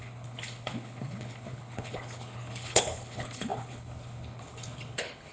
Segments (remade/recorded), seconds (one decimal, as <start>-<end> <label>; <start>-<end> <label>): 0.0-5.3 remade

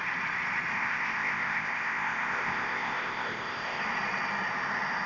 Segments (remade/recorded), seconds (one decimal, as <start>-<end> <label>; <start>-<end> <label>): 0.0-0.7 recorded; 0.7-3.8 remade; 3.8-5.1 recorded

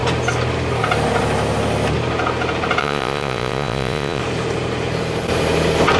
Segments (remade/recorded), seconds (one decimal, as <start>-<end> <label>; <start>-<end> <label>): 0.0-2.8 recorded; 2.8-4.2 remade; 4.2-6.0 recorded

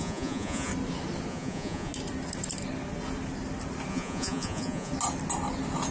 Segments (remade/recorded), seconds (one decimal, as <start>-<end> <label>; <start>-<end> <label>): 0.0-0.7 remade; 0.7-1.3 recorded; 1.3-1.9 remade; 1.9-3.9 recorded; 3.9-4.9 remade; 4.9-5.9 recorded